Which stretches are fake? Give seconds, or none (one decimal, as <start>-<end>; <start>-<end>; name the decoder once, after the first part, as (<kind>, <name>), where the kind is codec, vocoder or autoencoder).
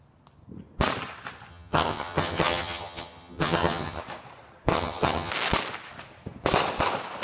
1.5-4.0 (vocoder, HiFi-GAN); 4.7-5.3